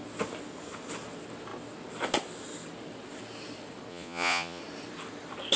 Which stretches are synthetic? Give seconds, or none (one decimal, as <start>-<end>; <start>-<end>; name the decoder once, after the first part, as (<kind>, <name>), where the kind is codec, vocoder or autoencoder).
3.9-4.6 (vocoder, Vocos)